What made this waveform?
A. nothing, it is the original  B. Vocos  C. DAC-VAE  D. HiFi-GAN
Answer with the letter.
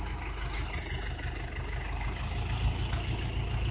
A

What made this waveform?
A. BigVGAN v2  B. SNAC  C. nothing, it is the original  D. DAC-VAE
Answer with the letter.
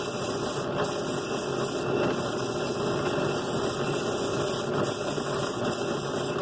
C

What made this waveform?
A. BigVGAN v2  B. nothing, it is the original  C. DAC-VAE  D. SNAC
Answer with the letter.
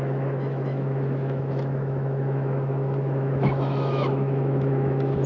C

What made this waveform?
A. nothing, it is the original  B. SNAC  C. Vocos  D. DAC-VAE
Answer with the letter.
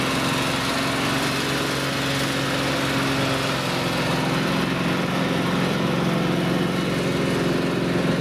A